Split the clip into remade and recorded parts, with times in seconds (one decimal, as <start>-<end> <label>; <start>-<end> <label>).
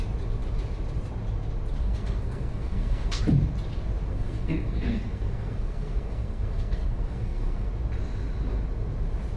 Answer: 0.0-1.8 recorded; 1.8-3.2 remade; 3.2-4.1 recorded; 4.1-7.7 remade; 7.7-9.4 recorded